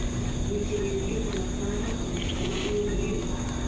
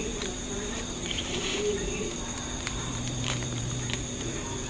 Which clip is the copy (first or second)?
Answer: second